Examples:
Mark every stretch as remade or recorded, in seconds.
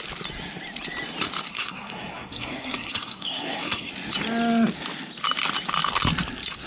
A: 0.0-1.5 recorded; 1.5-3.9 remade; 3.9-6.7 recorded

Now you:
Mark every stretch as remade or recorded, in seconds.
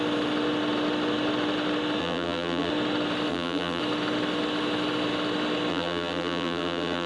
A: 0.0-2.0 recorded; 2.0-2.7 remade; 2.7-3.3 recorded; 3.3-3.8 remade; 3.8-5.7 recorded; 5.7-7.1 remade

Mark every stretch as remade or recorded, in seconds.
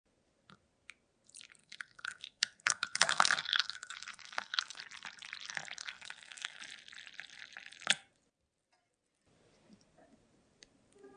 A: 0.0-1.6 recorded; 1.6-4.8 remade; 4.8-5.8 recorded; 5.8-6.6 remade; 6.6-11.2 recorded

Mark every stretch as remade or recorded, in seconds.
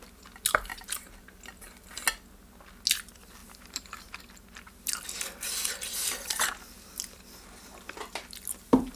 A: 0.0-0.7 recorded; 0.7-1.3 remade; 1.3-3.4 recorded; 3.4-4.2 remade; 4.2-9.0 recorded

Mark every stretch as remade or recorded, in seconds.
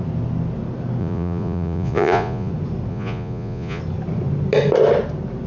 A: 0.0-1.0 recorded; 1.0-2.5 remade; 2.5-2.9 recorded; 2.9-3.8 remade; 3.8-5.5 recorded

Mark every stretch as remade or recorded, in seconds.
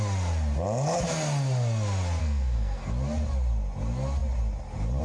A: 0.0-2.2 recorded; 2.2-2.9 remade; 2.9-5.0 recorded